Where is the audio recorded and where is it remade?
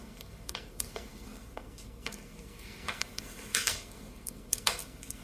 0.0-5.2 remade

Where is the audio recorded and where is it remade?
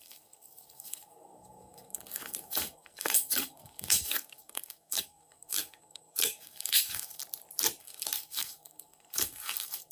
0.0-7.2 remade; 7.2-7.8 recorded; 7.8-9.9 remade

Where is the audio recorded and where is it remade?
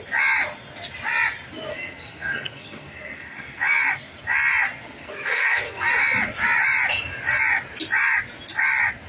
0.0-1.7 recorded; 1.7-3.6 remade; 3.6-5.0 recorded; 5.0-5.9 remade; 5.9-9.1 recorded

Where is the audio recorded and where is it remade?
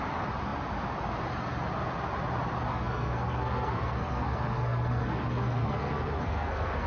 0.0-2.7 recorded; 2.7-6.9 remade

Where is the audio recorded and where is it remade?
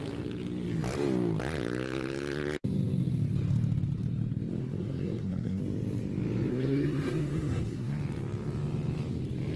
0.0-4.6 recorded; 4.6-5.6 remade; 5.6-6.5 recorded; 6.5-8.0 remade; 8.0-9.6 recorded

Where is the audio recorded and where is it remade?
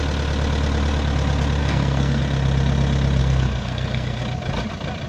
0.0-1.6 recorded; 1.6-2.2 remade; 2.2-3.2 recorded; 3.2-4.2 remade; 4.2-5.1 recorded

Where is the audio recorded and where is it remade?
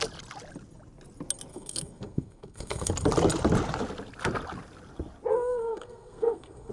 0.0-1.5 recorded; 1.5-2.9 remade; 2.9-5.3 recorded; 5.3-6.7 remade